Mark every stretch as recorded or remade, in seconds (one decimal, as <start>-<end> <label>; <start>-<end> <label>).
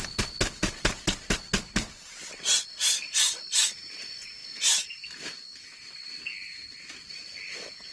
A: 0.0-7.9 recorded